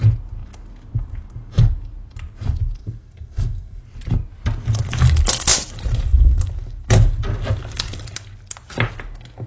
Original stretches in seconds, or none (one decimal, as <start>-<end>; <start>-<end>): 0.0-2.8; 3.8-9.5